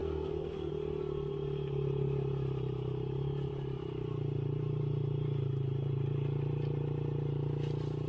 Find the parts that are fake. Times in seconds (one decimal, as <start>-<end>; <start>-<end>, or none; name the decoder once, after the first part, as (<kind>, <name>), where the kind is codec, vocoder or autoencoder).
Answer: 0.0-0.7 (codec, SNAC)